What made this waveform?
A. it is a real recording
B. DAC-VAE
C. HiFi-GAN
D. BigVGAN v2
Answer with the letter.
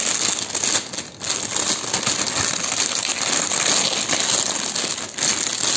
A